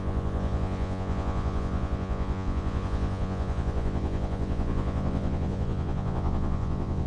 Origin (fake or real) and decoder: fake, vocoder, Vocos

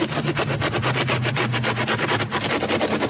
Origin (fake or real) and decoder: real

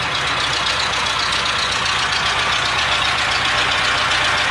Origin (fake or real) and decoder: fake, vocoder, Vocos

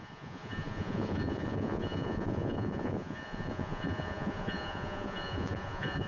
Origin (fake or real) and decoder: fake, vocoder, Vocos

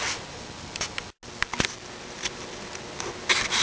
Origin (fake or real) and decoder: real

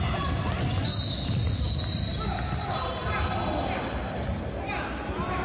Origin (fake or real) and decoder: real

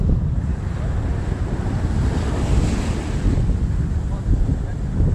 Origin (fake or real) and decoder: real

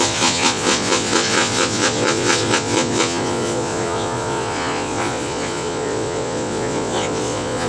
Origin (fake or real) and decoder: fake, vocoder, Vocos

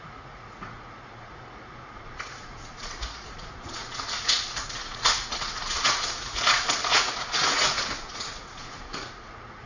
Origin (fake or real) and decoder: fake, vocoder, Vocos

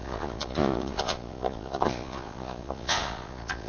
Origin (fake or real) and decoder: fake, vocoder, Vocos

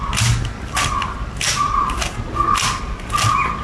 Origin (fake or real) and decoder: real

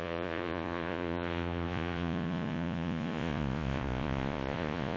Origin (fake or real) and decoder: fake, vocoder, Vocos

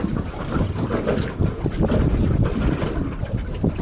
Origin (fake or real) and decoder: real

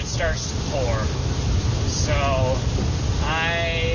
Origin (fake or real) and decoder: real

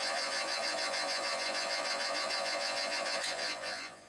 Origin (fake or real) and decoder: fake, vocoder, Vocos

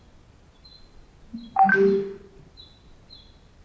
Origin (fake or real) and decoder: real